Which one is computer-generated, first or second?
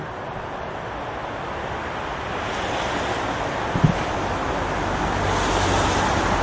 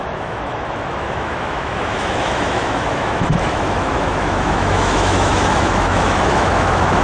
second